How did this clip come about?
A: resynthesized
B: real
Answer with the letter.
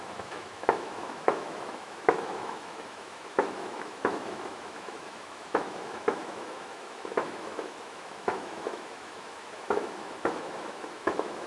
A